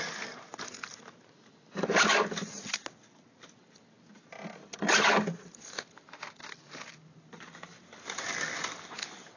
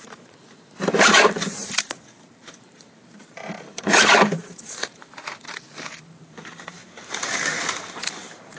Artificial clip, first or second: second